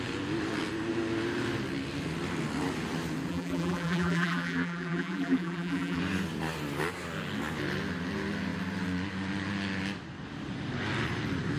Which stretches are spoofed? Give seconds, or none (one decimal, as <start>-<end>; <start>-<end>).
3.3-6.0